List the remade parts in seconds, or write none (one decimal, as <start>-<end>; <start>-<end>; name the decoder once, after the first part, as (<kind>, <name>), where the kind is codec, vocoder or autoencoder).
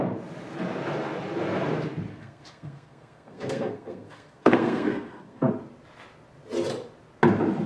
2.1-5.5 (codec, SNAC)